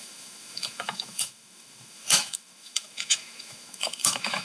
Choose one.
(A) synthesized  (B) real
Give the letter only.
A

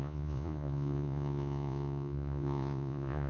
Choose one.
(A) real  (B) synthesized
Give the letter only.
B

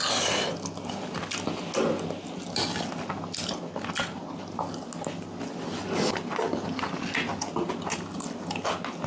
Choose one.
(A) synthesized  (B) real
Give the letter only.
B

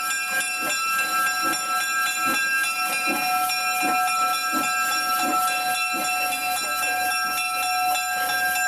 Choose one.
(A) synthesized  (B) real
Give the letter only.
B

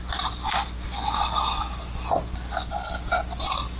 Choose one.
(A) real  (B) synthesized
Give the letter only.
A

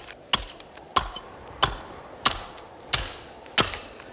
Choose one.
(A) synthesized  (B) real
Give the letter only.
B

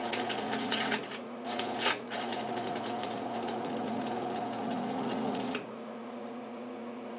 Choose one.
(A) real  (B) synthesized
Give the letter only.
B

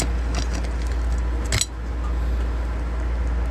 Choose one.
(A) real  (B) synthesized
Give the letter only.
A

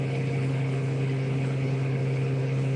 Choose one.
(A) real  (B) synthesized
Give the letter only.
B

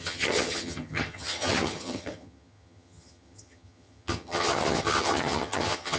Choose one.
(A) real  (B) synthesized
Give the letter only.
B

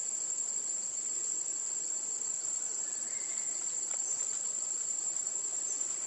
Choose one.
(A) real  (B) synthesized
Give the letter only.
B